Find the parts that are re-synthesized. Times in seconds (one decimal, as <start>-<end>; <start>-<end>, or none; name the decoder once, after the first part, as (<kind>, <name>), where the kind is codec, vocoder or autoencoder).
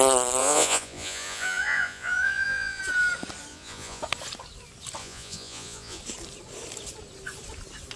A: 0.4-2.8 (vocoder, Vocos); 3.5-4.0; 5.0-6.0